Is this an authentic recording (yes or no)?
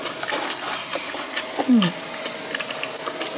yes